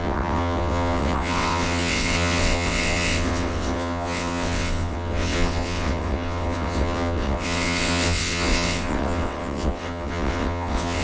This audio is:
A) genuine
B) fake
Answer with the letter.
B